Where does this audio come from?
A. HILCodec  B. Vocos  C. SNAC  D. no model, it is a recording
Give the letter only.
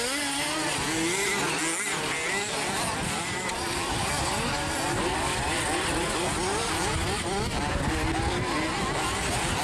D